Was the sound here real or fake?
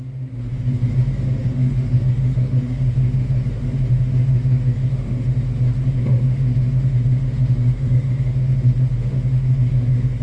fake